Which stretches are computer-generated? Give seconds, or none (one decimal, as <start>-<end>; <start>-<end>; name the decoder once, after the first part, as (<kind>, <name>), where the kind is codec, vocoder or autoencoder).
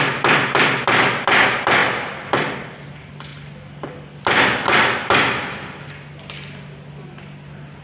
none